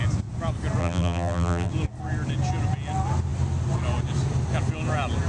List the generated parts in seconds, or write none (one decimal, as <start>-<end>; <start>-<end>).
0.8-1.7